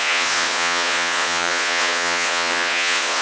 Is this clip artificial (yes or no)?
yes